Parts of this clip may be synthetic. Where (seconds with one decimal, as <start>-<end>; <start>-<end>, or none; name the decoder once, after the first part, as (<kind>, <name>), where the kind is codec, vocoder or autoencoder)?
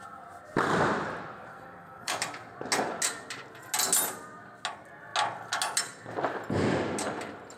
1.5-2.1 (codec, SNAC)